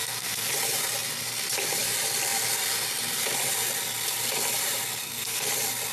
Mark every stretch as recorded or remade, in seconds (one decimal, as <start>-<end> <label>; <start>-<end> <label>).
0.0-0.5 remade; 0.5-5.0 recorded; 5.0-5.5 remade; 5.5-5.9 recorded